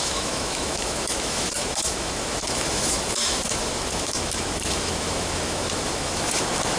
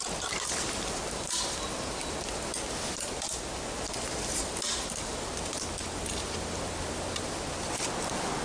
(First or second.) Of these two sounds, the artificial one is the first